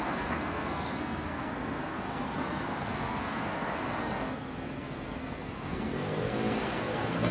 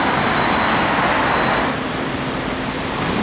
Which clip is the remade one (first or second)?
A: first